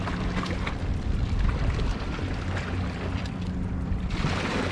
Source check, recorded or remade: recorded